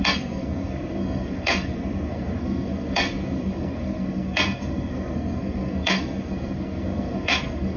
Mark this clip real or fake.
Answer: fake